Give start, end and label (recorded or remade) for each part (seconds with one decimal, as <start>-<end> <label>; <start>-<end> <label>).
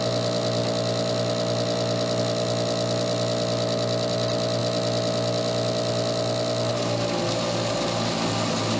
0.0-8.8 recorded